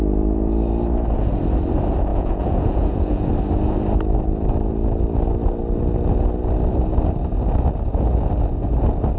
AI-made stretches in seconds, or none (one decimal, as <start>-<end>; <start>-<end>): 2.1-3.3